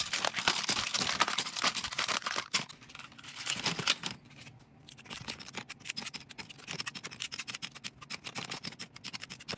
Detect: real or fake real